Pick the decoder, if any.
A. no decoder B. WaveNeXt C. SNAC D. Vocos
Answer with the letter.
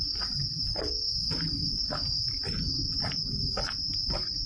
A